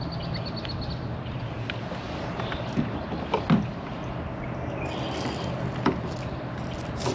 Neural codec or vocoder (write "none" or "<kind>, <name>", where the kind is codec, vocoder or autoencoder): none